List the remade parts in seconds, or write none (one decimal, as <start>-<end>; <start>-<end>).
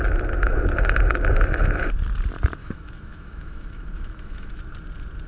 2.6-4.6